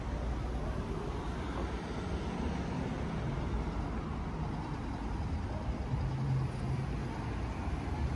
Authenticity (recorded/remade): recorded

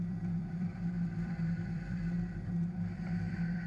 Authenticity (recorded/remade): remade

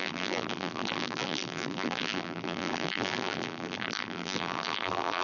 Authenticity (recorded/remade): remade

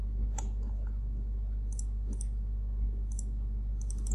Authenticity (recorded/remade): recorded